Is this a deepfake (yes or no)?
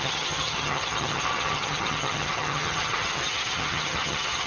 yes